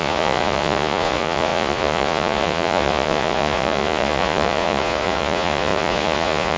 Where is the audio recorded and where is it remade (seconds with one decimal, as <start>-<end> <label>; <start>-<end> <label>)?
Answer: 0.0-6.6 remade